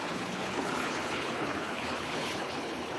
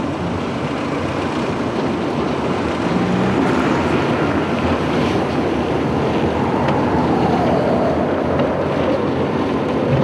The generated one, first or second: first